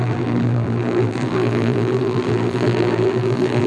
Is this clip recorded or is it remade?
remade